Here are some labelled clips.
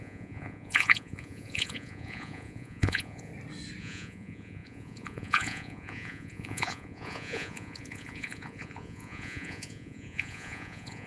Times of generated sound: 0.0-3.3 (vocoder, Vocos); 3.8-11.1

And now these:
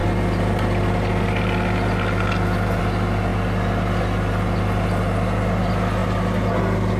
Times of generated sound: none

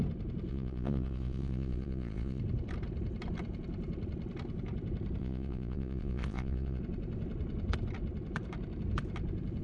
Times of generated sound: 0.5-2.4 (vocoder, Vocos); 5.2-6.8